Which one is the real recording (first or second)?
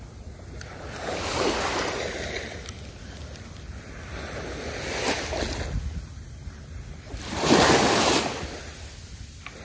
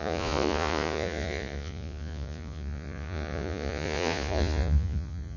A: first